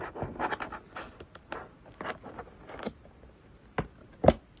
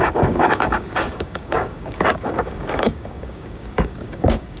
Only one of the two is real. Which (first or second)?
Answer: first